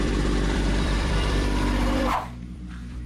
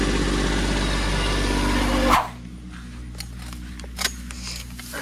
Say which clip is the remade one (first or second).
first